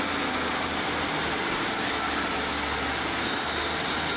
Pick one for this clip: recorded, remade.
recorded